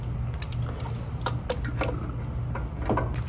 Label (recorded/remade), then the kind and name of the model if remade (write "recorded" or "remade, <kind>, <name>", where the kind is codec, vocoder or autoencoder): recorded